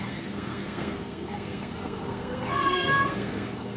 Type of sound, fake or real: fake